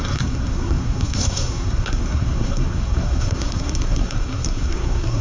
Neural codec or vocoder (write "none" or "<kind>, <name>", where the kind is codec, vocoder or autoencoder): codec, SNAC